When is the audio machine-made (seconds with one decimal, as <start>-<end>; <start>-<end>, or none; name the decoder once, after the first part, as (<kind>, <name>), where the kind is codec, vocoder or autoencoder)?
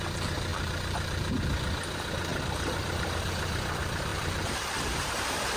0.5-1.3 (vocoder, BigVGAN v2); 2.3-3.2; 4.1-5.1